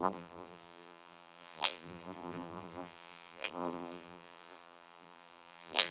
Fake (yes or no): yes